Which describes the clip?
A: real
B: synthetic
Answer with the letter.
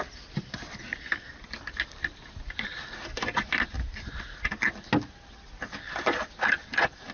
A